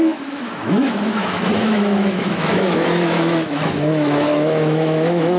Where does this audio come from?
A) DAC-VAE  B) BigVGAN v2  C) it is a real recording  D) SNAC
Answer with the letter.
A